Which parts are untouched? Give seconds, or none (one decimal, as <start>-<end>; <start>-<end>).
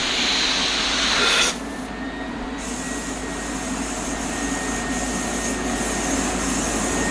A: 0.0-7.1